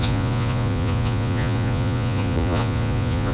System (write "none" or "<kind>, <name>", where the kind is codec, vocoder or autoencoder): vocoder, Vocos